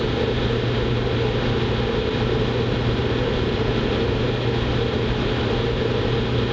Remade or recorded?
recorded